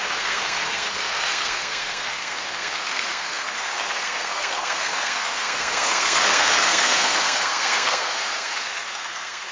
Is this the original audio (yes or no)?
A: no